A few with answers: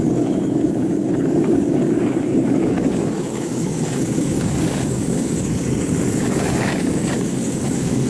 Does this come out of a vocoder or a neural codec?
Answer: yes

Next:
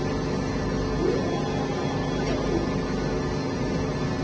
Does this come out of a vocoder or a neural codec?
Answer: no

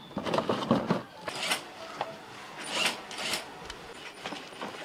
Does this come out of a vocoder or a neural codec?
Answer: no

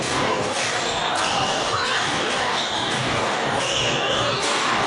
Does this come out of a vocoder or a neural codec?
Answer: yes